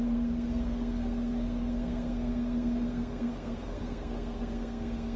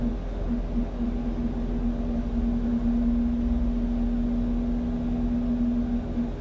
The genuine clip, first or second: second